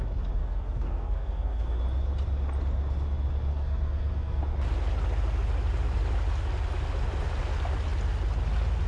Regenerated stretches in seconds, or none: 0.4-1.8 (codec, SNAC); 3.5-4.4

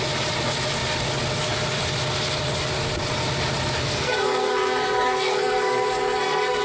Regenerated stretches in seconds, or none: 3.8-6.6 (codec, SNAC)

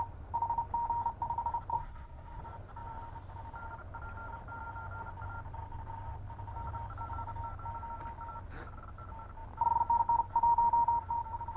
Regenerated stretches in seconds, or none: 1.7-2.4 (codec, SNAC)

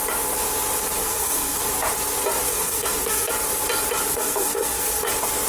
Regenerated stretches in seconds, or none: 1.0-1.6 (codec, SNAC); 2.5-3.3; 4.1-5.1

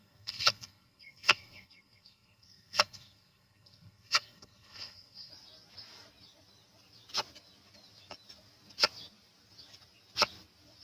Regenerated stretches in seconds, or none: 0.0-5.3 (codec, SNAC)

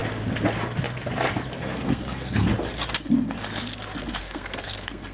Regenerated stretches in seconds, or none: 1.6-2.5 (codec, SNAC); 4.2-5.1